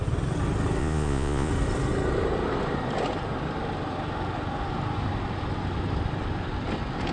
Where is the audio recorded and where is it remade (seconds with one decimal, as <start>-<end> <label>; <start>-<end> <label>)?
0.0-0.8 recorded; 0.8-1.5 remade; 1.5-7.1 recorded